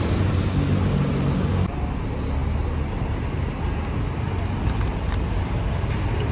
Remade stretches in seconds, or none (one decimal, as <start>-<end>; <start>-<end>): 4.9-5.4